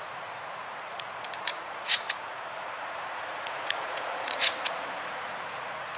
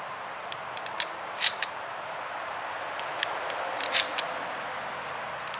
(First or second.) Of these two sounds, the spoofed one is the first